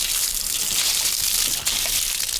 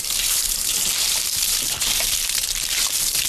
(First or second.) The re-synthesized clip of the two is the second